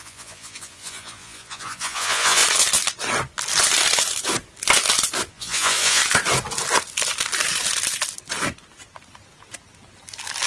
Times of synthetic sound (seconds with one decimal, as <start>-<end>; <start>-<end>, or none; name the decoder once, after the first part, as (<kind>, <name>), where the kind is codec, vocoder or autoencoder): 0.0-2.4 (vocoder, Vocos); 5.3-6.0